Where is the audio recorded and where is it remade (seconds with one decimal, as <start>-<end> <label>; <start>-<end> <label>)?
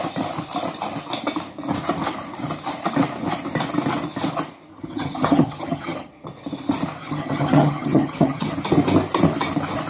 0.0-4.7 recorded; 4.7-6.1 remade; 6.1-7.0 recorded; 7.0-8.5 remade; 8.5-9.9 recorded